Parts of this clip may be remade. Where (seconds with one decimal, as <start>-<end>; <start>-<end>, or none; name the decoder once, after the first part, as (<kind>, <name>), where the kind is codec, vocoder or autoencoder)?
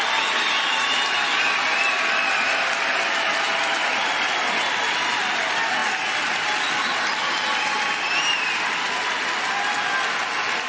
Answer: none